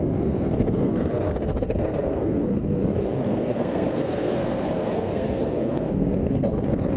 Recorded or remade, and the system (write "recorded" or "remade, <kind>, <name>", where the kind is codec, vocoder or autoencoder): remade, codec, SNAC